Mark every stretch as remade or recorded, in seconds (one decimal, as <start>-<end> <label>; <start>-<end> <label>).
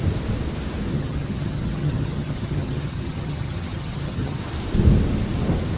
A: 0.0-0.9 recorded; 0.9-4.4 remade; 4.4-5.8 recorded